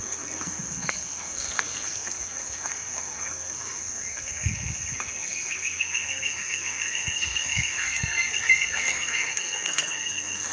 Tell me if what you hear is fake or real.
fake